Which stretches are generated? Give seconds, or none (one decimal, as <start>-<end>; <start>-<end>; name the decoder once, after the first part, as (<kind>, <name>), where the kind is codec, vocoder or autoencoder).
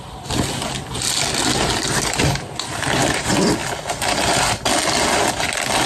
none